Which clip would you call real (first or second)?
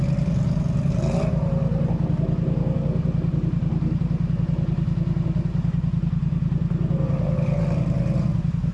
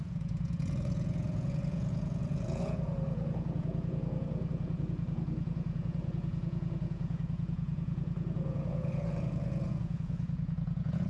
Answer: first